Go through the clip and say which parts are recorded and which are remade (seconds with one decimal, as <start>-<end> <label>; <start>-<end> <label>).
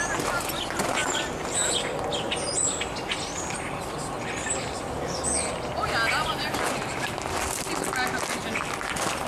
0.0-9.3 recorded